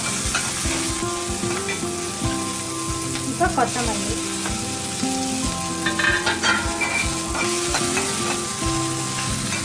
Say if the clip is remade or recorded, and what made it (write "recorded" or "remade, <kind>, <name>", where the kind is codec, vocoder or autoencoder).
recorded